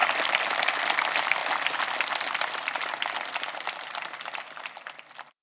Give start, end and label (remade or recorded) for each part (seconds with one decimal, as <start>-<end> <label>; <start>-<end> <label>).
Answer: 0.0-0.7 remade; 0.7-1.4 recorded; 1.4-4.6 remade; 4.6-5.4 recorded